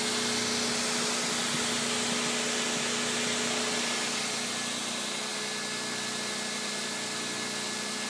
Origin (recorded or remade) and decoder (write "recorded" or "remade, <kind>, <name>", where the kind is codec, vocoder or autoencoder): recorded